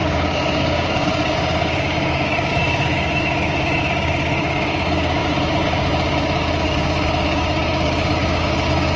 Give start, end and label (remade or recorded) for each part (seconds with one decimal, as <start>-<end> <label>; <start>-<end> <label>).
0.0-9.0 remade